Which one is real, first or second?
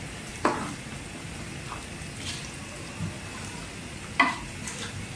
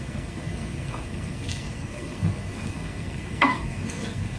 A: first